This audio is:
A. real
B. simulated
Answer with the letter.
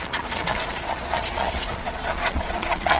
B